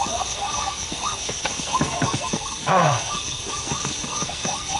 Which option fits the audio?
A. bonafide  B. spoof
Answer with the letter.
B